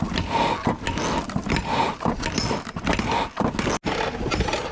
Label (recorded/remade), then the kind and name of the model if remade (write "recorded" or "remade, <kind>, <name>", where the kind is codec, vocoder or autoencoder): recorded